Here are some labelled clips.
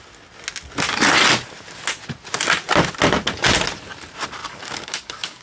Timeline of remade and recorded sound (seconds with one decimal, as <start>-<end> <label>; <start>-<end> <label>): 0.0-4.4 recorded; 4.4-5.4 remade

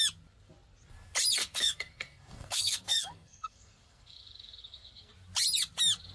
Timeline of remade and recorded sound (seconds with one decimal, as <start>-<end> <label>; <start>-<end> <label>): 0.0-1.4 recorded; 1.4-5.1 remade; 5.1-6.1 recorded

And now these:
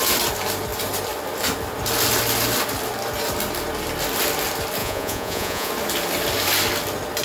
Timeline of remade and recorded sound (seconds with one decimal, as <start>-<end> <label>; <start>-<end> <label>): 0.0-4.8 recorded; 4.8-5.7 remade; 5.7-7.2 recorded

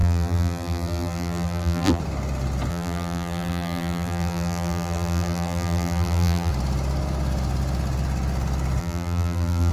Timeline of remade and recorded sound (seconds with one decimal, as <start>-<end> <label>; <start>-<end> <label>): 0.0-2.0 remade; 2.0-2.7 recorded; 2.7-6.5 remade; 6.5-8.8 recorded; 8.8-9.7 remade

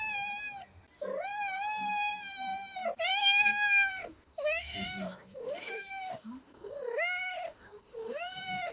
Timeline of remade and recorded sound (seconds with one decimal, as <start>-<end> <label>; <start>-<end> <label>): 0.0-3.1 recorded; 3.1-8.7 remade

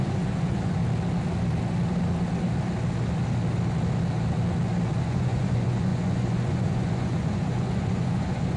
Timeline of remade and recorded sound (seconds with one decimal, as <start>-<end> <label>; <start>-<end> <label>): 0.0-0.8 remade; 0.8-5.0 recorded; 5.0-8.6 remade

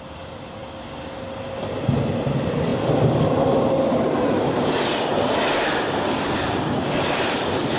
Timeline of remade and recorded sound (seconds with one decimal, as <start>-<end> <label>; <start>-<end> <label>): 0.0-6.4 recorded; 6.4-7.8 remade